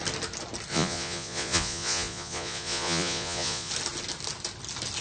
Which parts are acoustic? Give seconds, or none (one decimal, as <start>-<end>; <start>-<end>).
0.0-0.7; 3.7-5.0